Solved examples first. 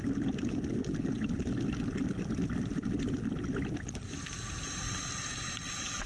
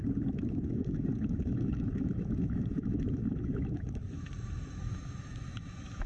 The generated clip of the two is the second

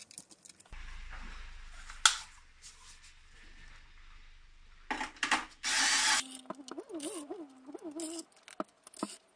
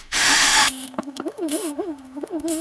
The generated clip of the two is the second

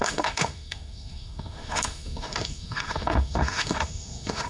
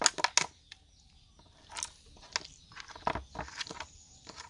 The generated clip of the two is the first